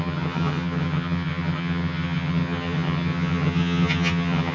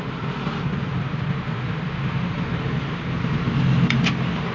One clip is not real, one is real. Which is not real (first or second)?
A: first